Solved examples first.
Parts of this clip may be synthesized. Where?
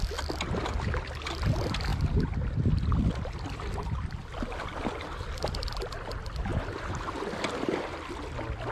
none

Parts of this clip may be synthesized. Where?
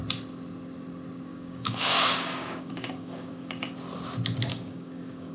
1.3-3.7 (codec, DAC); 4.5-5.3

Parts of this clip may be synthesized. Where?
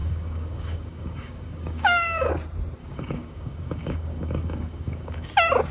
0.0-2.3 (codec, DAC); 2.8-5.3